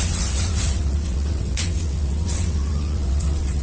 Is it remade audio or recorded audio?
remade